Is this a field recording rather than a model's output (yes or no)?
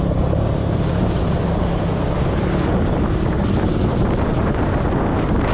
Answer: no